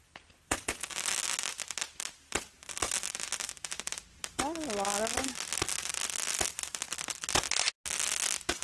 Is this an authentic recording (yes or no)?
yes